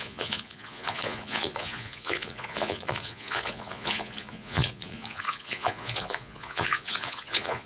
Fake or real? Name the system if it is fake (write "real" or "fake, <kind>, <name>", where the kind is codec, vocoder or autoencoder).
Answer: fake, vocoder, Vocos